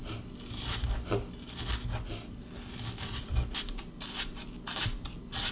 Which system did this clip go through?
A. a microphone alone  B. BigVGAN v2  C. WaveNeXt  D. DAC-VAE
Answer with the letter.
A